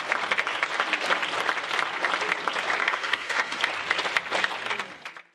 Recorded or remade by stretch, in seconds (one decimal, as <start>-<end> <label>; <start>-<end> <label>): 0.0-2.8 recorded; 2.8-3.6 remade; 3.6-5.3 recorded